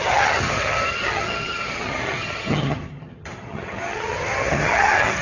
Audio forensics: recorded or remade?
remade